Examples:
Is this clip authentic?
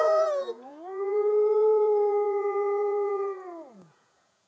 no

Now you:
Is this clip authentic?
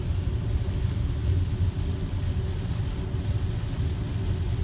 yes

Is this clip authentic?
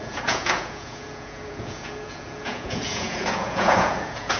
no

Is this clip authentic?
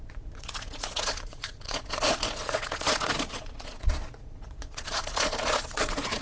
no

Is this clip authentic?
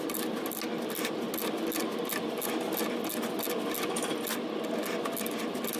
yes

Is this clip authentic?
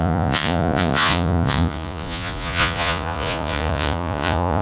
no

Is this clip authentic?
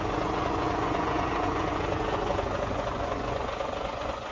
no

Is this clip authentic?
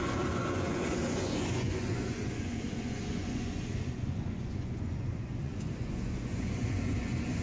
no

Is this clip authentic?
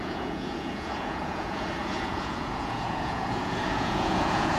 no